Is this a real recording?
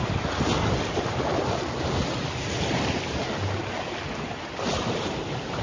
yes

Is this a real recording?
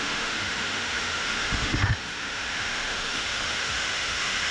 no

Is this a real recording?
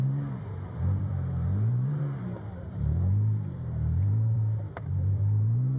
no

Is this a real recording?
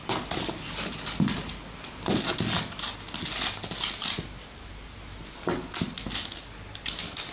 yes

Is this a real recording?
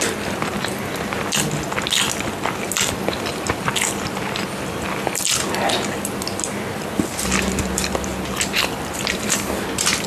yes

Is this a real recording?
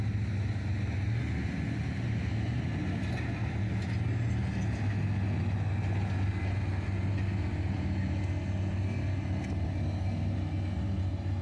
yes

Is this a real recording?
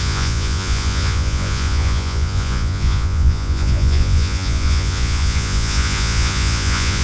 no